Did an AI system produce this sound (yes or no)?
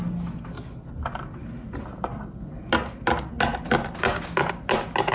no